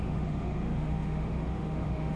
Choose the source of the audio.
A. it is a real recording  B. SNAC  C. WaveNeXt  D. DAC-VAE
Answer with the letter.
D